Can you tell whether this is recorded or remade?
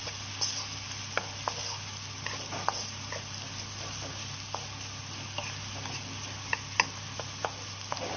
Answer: recorded